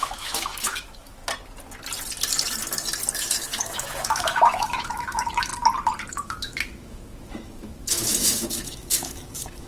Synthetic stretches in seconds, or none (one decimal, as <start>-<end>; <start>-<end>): 0.0-1.2; 3.1-5.5; 6.1-9.7